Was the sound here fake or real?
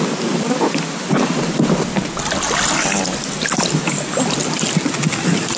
real